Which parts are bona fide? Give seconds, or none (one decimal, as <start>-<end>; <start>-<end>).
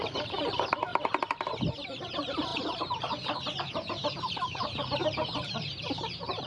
0.9-2.0